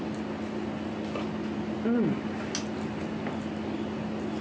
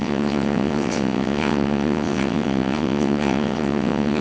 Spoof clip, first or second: second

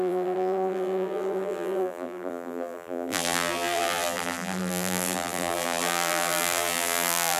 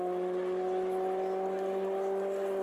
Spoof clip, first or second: first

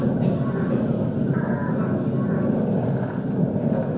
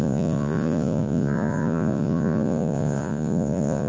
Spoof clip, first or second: second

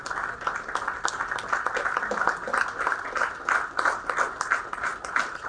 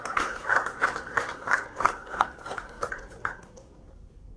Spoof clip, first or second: second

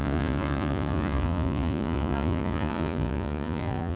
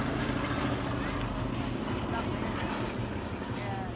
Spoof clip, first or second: first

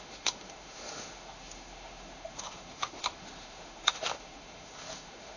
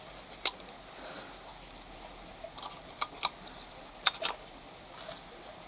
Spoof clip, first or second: first